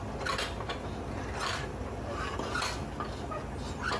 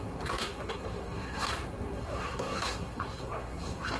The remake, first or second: second